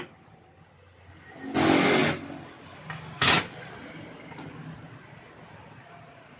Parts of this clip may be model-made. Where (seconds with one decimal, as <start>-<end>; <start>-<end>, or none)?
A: none